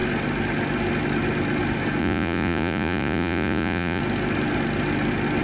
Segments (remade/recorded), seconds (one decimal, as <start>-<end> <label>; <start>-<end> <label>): 0.0-2.0 recorded; 2.0-4.0 remade; 4.0-5.4 recorded